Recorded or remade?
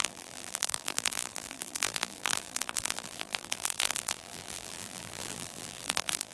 remade